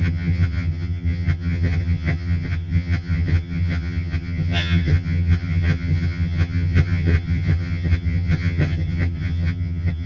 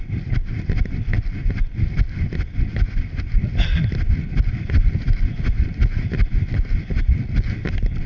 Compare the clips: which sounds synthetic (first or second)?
first